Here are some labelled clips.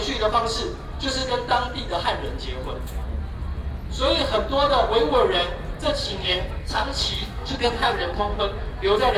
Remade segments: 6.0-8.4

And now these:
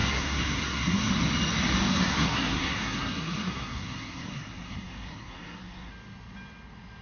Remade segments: 0.0-1.1; 1.9-5.9

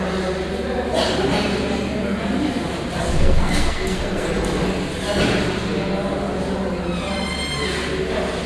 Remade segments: 3.0-4.3

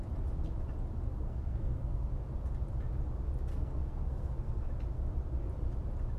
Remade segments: 1.1-2.1; 3.5-4.7